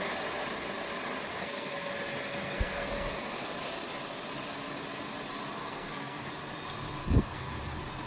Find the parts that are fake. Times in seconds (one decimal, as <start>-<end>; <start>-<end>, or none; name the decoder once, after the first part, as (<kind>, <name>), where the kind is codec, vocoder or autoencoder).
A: 1.3-1.9 (codec, SNAC); 2.3-3.3; 5.6-6.3; 7.0-7.6

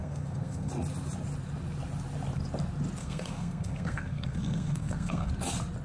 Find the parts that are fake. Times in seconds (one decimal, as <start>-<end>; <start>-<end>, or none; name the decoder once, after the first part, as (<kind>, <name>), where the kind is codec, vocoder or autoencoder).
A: 0.0-0.7 (codec, SNAC); 3.0-5.3

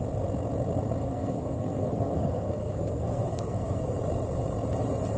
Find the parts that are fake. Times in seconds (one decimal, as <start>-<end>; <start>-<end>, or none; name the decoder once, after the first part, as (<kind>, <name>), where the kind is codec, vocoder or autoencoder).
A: 1.0-4.0 (codec, SNAC)

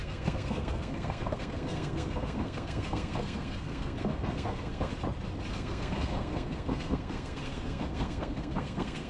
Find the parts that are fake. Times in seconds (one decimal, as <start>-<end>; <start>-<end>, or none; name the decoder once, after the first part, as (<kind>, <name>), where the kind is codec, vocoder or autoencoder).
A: 0.0-4.9 (codec, SNAC); 5.5-9.1

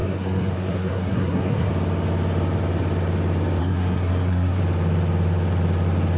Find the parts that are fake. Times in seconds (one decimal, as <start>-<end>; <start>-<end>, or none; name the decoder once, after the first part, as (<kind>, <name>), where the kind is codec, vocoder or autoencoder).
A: 0.0-1.7 (codec, SNAC); 3.6-4.6